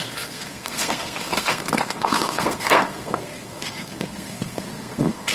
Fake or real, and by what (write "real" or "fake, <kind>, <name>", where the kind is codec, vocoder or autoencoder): fake, codec, SNAC